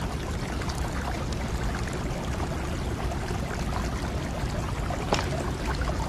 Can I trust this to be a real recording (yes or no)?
yes